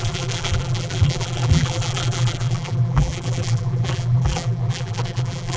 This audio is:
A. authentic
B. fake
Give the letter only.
B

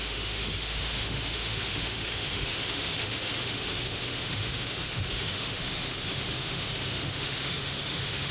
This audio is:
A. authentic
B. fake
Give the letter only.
B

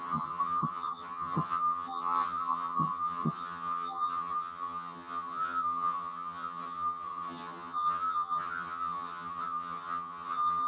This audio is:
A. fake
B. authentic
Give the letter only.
A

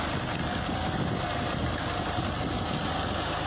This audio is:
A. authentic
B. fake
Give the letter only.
A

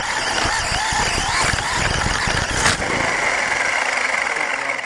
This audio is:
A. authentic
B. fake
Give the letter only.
A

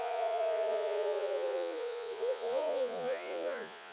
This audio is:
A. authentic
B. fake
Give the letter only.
B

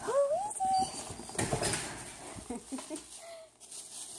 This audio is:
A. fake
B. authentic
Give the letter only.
B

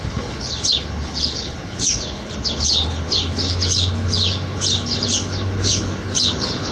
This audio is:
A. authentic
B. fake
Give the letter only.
B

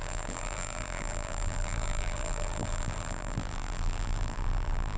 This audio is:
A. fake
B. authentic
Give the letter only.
A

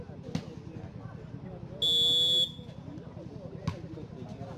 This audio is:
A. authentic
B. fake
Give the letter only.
A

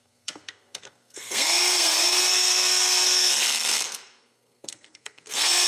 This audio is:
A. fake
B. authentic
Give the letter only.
A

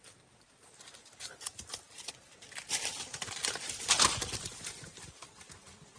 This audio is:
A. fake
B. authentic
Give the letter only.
B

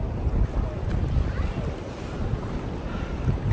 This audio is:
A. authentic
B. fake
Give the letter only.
A